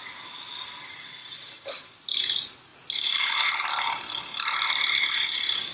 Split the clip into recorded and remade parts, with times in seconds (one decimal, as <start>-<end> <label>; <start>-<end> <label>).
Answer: 0.0-0.6 remade; 0.6-1.2 recorded; 1.2-1.8 remade; 1.8-5.7 recorded